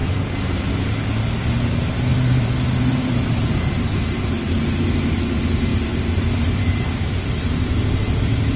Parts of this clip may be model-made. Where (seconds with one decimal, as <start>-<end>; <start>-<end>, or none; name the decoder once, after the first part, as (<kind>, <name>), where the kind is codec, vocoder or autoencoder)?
0.0-0.6 (vocoder, BigVGAN v2); 2.1-4.6; 5.7-8.2